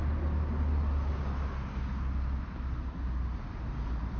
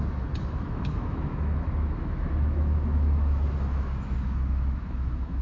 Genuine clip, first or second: first